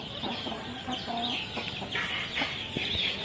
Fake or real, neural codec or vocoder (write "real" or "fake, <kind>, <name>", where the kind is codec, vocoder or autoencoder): real